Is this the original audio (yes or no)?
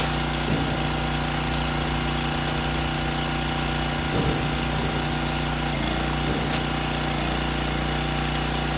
yes